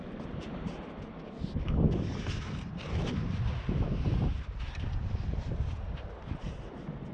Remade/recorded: recorded